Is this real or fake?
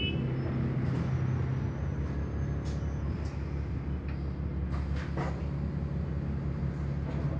real